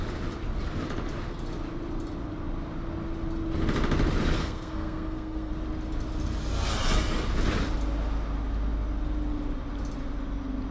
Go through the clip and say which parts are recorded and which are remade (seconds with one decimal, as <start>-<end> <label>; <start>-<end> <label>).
0.0-4.4 recorded; 4.4-5.5 remade; 5.5-10.7 recorded